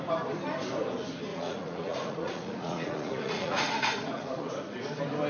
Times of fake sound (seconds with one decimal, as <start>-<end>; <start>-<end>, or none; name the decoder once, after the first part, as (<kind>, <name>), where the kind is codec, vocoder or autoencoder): 1.3-4.5 (vocoder, Vocos)